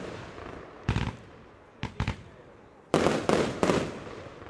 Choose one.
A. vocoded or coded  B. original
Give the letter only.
A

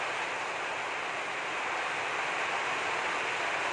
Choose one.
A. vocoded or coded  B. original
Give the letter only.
B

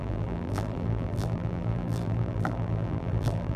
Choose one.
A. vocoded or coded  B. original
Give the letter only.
A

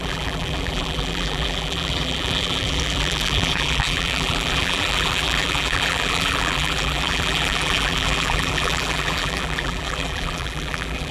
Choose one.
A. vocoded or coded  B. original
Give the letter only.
A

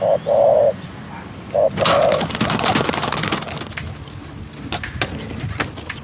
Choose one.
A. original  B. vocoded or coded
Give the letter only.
A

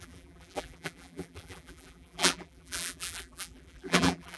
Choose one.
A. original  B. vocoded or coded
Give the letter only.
B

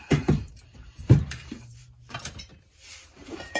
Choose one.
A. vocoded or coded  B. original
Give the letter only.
A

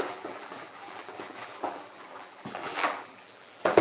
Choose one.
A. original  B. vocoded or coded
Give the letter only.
B